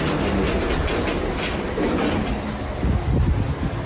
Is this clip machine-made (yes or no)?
no